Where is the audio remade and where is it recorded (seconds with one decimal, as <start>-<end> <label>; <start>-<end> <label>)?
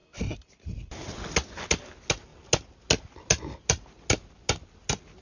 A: 0.0-1.3 remade; 1.3-5.2 recorded